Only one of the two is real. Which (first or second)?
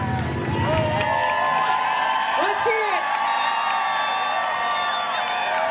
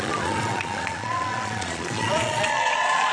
first